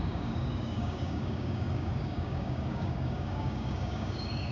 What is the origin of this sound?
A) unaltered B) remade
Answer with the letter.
B